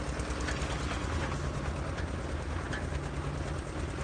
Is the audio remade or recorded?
recorded